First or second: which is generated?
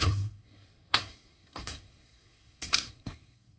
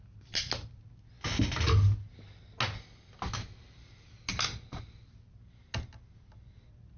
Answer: first